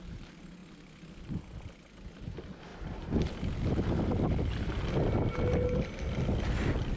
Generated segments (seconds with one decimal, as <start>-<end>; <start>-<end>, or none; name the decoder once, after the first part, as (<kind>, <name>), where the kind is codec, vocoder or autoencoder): 2.7-4.8 (vocoder, BigVGAN v2)